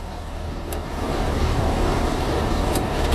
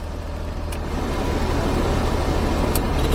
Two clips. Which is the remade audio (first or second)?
first